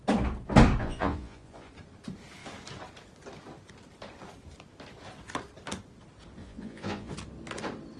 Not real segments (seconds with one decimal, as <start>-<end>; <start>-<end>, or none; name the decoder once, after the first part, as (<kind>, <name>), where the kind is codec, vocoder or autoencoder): 0.8-1.7 (vocoder, Vocos); 6.4-7.1